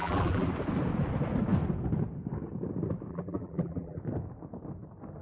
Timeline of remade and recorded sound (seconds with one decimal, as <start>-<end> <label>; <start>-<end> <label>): 0.0-0.5 remade; 0.5-3.1 recorded; 3.1-4.0 remade; 4.0-5.2 recorded